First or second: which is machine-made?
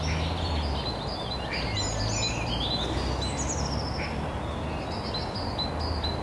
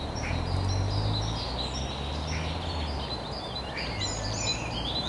second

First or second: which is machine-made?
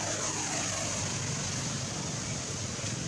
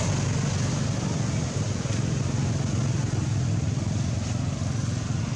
first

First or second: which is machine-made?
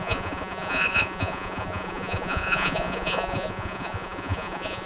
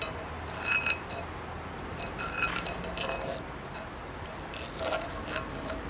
first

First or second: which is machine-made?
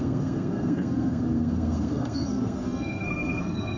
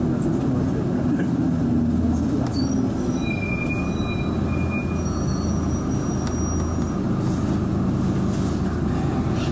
first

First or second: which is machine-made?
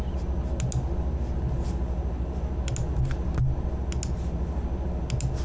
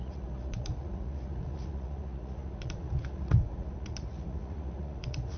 second